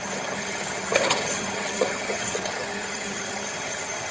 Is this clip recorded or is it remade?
remade